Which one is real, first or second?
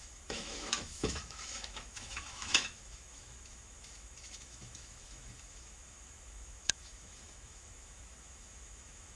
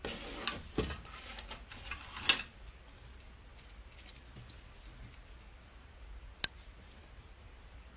second